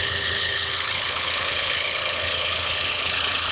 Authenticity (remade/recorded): remade